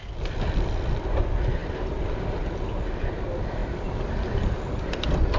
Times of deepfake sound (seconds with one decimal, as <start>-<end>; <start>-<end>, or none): none

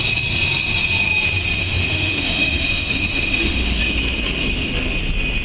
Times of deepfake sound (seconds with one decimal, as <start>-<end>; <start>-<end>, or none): 1.6-3.8

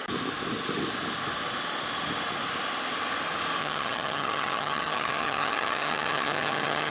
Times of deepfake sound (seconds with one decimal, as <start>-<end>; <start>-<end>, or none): 3.6-6.9

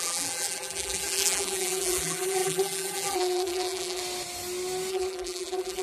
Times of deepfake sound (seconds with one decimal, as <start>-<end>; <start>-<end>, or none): 0.0-4.0; 4.9-5.8

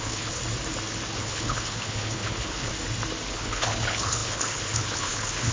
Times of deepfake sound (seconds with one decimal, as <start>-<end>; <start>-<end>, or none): 0.0-0.4; 1.2-2.7; 3.3-5.5

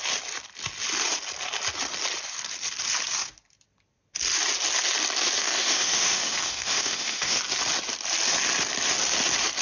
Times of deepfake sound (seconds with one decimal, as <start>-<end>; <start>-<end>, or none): 5.4-7.4

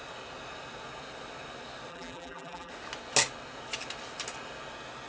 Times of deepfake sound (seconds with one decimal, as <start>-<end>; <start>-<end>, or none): 1.9-2.7